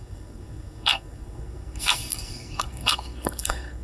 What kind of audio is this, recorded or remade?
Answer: remade